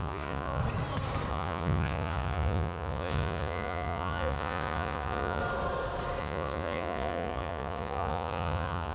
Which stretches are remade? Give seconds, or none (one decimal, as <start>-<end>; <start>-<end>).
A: 0.0-0.6; 1.3-5.4; 6.2-8.9